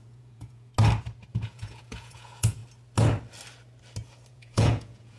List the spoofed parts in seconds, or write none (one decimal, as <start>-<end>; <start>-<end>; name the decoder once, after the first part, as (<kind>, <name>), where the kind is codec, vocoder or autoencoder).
0.0-0.7 (vocoder, Vocos); 1.3-2.6; 4.3-5.2

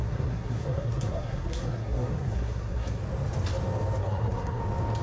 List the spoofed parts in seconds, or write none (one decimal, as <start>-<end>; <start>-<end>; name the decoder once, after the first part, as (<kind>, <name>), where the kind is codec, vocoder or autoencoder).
0.0-3.0 (codec, SNAC); 4.0-4.6

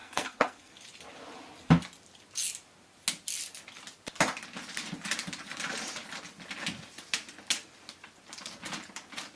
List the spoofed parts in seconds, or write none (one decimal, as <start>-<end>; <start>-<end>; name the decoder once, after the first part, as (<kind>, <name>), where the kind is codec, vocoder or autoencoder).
0.0-0.7 (codec, SNAC)

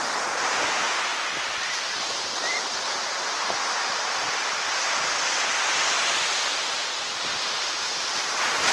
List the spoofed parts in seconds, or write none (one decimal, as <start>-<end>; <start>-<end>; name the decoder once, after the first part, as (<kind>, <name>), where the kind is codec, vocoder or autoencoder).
0.0-1.1 (vocoder, BigVGAN v2); 1.7-3.8; 6.2-8.7